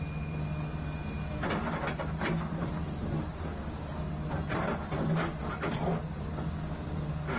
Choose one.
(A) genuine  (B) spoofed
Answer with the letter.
A